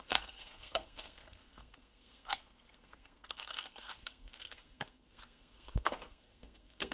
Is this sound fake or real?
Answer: fake